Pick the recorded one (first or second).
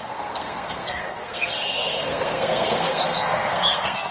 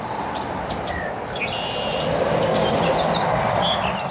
second